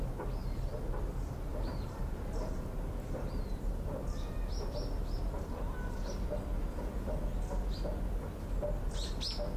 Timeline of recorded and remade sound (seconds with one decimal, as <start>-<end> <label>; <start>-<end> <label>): 0.0-0.4 recorded; 0.4-1.1 remade; 1.1-1.5 recorded; 1.5-2.6 remade; 2.6-9.6 recorded